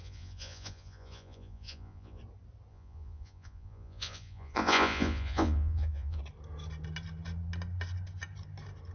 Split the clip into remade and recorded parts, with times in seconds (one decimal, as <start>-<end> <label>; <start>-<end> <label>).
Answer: 0.0-2.2 remade; 2.2-2.7 recorded; 2.7-6.2 remade; 6.2-8.9 recorded

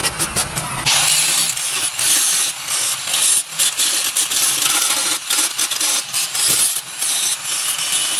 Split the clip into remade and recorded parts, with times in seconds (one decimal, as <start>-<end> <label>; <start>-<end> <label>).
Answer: 0.0-8.2 recorded

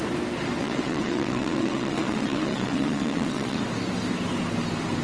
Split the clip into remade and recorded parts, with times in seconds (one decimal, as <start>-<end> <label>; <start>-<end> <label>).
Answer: 0.0-0.6 recorded; 0.6-3.6 remade; 3.6-5.0 recorded

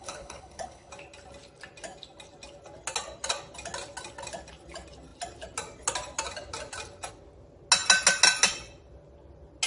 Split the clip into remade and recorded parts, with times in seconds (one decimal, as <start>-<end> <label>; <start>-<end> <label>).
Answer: 0.0-0.9 remade; 0.9-9.7 recorded

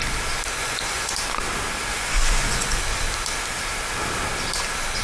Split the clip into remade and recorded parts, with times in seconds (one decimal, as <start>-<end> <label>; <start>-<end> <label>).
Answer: 0.0-0.6 recorded; 0.6-1.1 remade; 1.1-1.9 recorded; 1.9-2.8 remade; 2.8-5.0 recorded

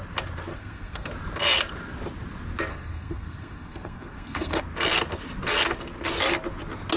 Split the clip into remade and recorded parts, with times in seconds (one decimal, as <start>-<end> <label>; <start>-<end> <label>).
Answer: 0.0-0.5 recorded; 0.5-1.1 remade; 1.1-2.7 recorded; 2.7-4.6 remade; 4.6-7.0 recorded

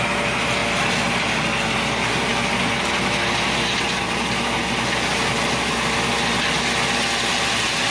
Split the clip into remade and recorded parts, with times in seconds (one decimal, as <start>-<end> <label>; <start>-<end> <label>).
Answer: 0.0-7.9 recorded